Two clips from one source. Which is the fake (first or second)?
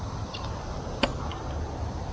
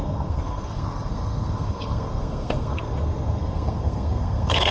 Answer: second